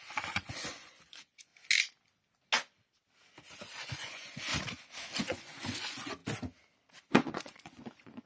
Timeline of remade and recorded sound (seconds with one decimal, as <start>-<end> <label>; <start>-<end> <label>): 0.0-1.5 remade; 1.5-3.8 recorded; 3.8-4.5 remade; 4.5-5.2 recorded; 5.2-6.2 remade; 6.2-7.1 recorded; 7.1-8.3 remade

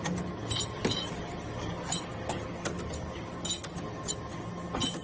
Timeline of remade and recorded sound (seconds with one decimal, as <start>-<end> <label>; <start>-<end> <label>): 0.0-5.0 recorded

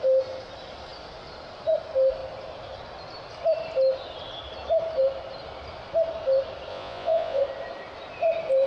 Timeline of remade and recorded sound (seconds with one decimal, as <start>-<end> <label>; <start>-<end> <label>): 0.0-6.7 recorded; 6.7-7.4 remade; 7.4-8.7 recorded

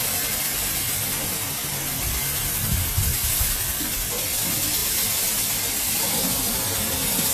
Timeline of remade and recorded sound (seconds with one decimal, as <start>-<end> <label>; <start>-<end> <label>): 0.0-7.3 recorded

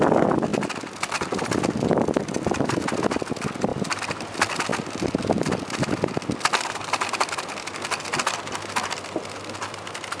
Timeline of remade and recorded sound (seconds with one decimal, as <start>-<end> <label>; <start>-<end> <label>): 0.0-10.2 recorded

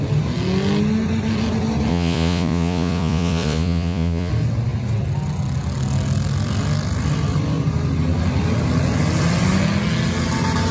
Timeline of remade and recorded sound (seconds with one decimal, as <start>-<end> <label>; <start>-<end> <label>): 0.0-1.9 recorded; 1.9-4.3 remade; 4.3-10.7 recorded

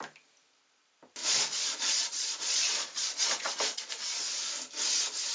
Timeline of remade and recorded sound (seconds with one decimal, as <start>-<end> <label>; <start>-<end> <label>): 0.0-1.2 recorded; 1.2-3.9 remade; 3.9-5.3 recorded

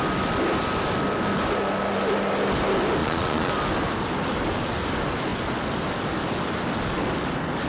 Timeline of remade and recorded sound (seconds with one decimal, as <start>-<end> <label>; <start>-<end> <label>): 0.0-3.0 recorded; 3.0-3.5 remade; 3.5-7.7 recorded